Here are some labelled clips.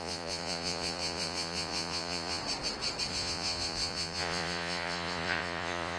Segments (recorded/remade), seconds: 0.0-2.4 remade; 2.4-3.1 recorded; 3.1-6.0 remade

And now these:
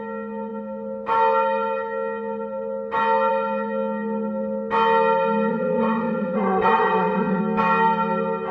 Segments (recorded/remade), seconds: 0.0-5.5 recorded; 5.5-7.4 remade; 7.4-8.5 recorded

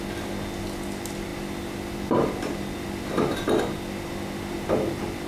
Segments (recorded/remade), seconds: 0.0-5.3 recorded

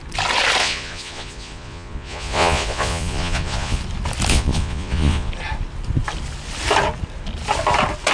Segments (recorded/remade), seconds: 0.0-0.6 recorded; 0.6-3.8 remade; 3.8-4.3 recorded; 4.3-5.3 remade; 5.3-8.1 recorded

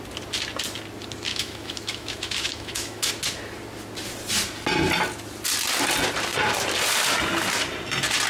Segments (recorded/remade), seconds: 0.0-1.3 recorded; 1.3-3.1 remade; 3.1-8.3 recorded

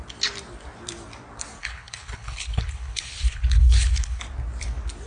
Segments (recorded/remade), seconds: 0.0-1.6 recorded; 1.6-4.2 remade; 4.2-5.1 recorded

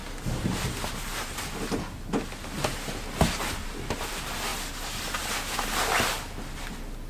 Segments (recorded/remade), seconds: 0.0-7.1 recorded